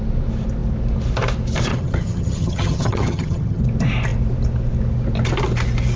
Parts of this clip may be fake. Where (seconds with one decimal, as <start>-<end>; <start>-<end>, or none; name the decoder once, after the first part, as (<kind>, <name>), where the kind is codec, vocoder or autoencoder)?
1.7-3.6 (vocoder, HiFi-GAN)